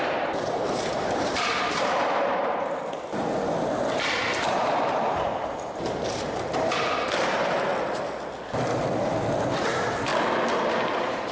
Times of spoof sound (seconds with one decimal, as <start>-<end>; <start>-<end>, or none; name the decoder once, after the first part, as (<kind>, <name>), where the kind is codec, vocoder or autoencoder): 0.0-2.8 (vocoder, BigVGAN v2); 3.9-7.7; 9.6-10.1; 10.6-11.3